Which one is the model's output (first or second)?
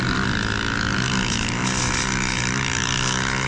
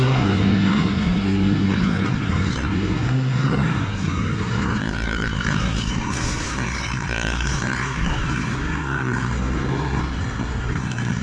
second